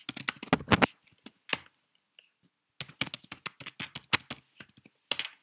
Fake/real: real